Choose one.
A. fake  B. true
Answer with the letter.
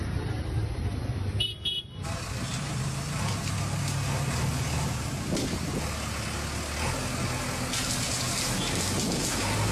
B